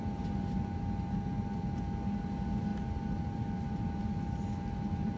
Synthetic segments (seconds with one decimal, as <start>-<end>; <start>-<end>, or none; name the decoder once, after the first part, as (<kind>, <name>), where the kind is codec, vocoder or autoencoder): none